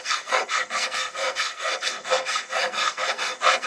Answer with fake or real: fake